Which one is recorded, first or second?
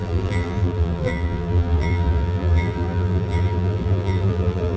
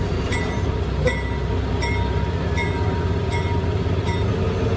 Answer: second